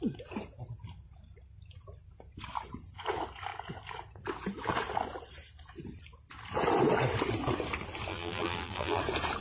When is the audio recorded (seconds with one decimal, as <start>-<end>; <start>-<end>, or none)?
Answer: 0.0-8.1; 9.0-9.4